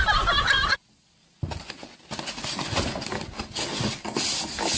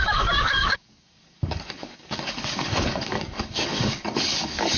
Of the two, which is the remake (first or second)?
second